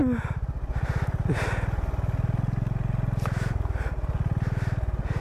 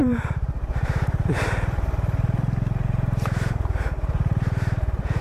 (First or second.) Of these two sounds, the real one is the first